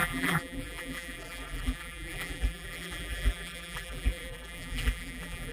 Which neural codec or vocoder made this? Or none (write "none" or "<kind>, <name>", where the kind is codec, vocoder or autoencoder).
vocoder, BigVGAN v2